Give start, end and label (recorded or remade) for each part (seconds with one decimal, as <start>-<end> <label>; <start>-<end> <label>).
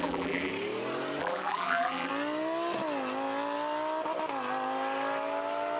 0.0-0.5 remade; 0.5-1.2 recorded; 1.2-2.1 remade; 2.1-5.8 recorded